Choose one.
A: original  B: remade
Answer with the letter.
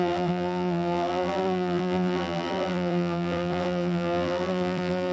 B